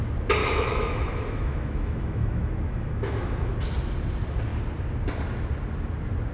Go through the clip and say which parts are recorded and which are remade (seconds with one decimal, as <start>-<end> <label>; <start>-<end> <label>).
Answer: 0.0-0.4 recorded; 0.4-3.5 remade; 3.5-6.3 recorded